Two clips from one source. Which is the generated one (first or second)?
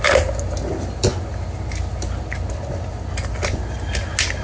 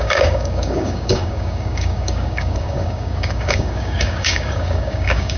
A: second